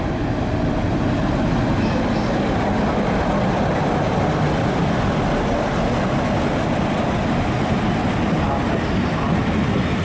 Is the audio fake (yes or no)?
no